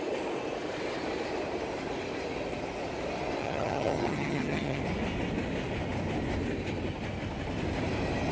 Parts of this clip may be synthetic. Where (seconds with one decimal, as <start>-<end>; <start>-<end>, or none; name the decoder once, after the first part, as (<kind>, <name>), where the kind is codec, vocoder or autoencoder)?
3.4-4.8 (vocoder, HiFi-GAN)

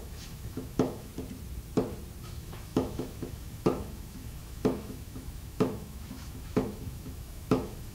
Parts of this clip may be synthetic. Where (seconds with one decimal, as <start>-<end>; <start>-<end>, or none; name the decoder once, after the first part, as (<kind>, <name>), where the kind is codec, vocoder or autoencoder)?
0.0-1.1 (autoencoder, DAC-VAE); 2.2-7.9